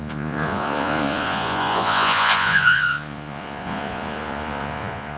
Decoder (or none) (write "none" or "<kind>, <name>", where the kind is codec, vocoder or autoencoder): vocoder, Vocos